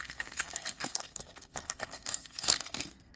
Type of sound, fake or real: fake